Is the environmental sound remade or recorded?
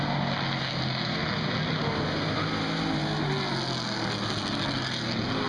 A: recorded